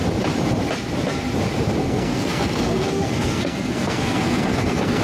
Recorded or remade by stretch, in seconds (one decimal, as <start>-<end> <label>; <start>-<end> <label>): 0.0-1.8 recorded; 1.8-5.0 remade